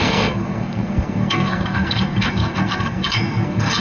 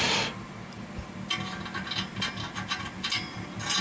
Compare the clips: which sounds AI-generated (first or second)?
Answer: first